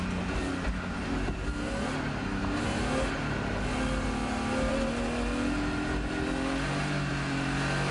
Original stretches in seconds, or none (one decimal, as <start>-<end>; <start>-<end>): 0.0-7.9